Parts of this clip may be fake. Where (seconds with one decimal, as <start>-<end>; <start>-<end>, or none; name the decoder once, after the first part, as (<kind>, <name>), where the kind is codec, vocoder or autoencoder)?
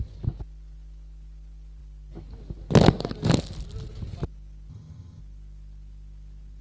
4.7-5.2 (vocoder, HiFi-GAN)